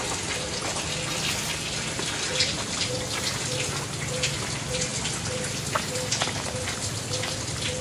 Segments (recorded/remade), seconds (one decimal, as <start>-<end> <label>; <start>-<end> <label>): 0.0-7.8 recorded